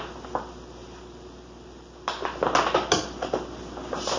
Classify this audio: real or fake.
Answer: real